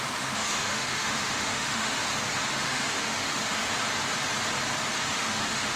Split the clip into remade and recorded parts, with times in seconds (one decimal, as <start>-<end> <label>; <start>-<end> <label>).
0.0-2.0 remade; 2.0-2.5 recorded; 2.5-3.7 remade; 3.7-5.1 recorded; 5.1-5.8 remade